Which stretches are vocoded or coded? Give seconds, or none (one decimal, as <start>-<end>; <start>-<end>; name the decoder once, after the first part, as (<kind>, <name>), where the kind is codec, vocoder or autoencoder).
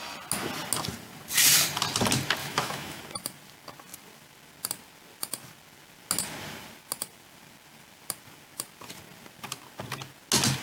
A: 2.4-3.0 (autoencoder, DAC-VAE)